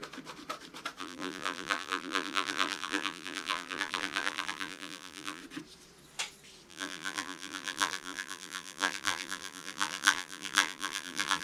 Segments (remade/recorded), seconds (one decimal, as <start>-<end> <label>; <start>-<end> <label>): 0.0-1.0 recorded; 1.0-5.4 remade; 5.4-6.7 recorded; 6.7-11.4 remade